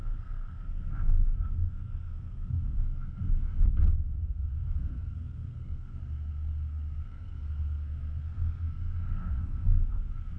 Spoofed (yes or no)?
yes